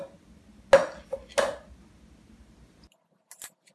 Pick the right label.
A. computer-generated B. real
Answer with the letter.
B